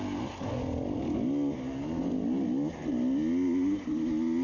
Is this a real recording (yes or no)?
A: yes